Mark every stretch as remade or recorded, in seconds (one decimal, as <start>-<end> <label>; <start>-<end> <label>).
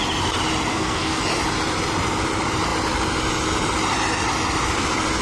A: 0.0-0.7 recorded; 0.7-1.2 remade; 1.2-5.2 recorded